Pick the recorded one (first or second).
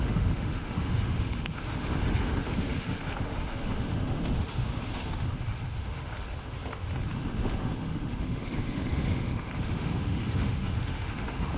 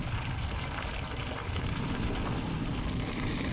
second